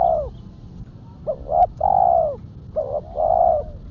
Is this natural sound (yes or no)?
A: yes